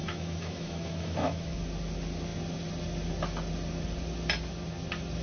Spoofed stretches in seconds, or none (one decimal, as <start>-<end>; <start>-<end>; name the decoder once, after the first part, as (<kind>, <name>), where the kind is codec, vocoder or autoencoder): 0.0-1.6 (autoencoder, DAC-VAE)